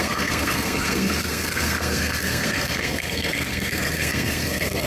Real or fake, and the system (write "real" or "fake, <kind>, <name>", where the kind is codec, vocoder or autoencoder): fake, codec, SNAC